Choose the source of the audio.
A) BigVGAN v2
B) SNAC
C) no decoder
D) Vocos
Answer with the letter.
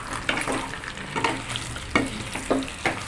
C